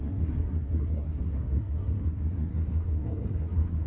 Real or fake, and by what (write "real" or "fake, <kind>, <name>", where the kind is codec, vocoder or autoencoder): fake, codec, SNAC